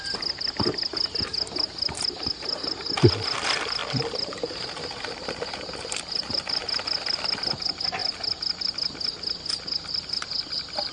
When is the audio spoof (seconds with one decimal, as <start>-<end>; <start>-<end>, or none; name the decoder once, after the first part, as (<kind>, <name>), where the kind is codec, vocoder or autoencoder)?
none